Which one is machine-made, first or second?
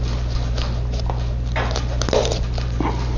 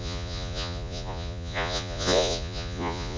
second